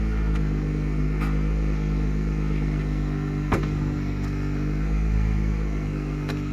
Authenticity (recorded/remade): remade